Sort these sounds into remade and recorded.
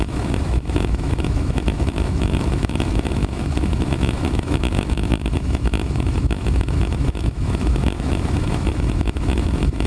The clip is remade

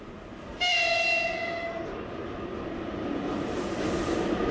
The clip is recorded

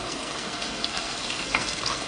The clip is remade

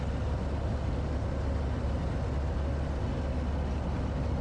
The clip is recorded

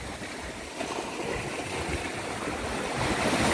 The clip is recorded